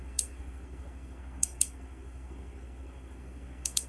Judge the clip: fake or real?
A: fake